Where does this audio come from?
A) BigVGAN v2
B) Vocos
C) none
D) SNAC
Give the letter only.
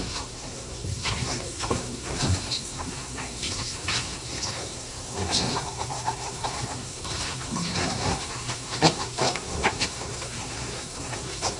D